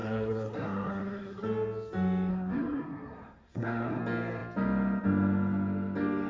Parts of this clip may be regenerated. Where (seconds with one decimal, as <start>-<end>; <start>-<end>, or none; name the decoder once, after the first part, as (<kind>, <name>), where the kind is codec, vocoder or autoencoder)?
0.0-1.4 (codec, SNAC); 2.3-4.0

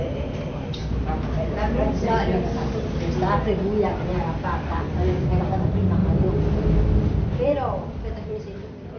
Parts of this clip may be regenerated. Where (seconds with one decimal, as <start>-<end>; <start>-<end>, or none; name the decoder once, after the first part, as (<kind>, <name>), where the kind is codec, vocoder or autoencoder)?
6.0-8.4 (vocoder, BigVGAN v2)

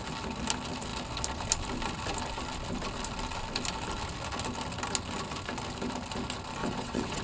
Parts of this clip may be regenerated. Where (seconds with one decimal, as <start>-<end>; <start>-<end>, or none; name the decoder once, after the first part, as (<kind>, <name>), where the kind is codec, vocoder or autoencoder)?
6.6-7.2 (vocoder, WaveNeXt)

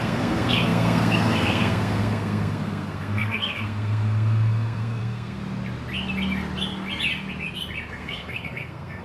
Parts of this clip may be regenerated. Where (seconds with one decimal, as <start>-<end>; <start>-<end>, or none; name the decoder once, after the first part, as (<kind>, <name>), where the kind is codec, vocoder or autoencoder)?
0.0-5.4 (codec, SNAC); 7.9-9.0

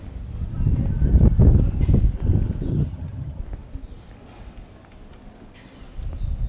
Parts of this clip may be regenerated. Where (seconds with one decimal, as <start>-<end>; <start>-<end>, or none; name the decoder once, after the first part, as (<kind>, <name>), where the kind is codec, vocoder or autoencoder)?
2.7-3.4 (vocoder, HiFi-GAN)

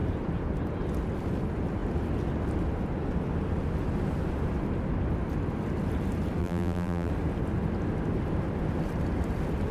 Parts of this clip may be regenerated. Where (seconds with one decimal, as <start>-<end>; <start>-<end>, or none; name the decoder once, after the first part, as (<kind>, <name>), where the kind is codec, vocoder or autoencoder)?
6.4-7.1 (vocoder, BigVGAN v2)

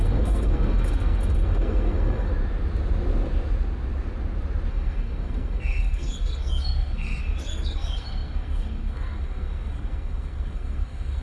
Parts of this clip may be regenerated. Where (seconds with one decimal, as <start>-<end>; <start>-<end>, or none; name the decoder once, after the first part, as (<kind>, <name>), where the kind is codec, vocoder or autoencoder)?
0.0-2.3 (codec, SNAC); 4.7-11.2

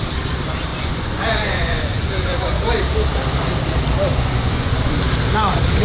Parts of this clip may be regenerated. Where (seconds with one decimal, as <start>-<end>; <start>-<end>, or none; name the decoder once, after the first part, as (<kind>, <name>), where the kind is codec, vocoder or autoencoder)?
0.7-2.7 (vocoder, Vocos); 4.1-5.0